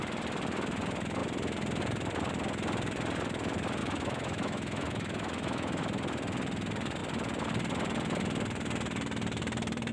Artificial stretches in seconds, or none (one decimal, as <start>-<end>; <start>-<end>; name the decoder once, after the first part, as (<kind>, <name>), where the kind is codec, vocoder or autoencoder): 3.8-5.8 (autoencoder, DAC-VAE)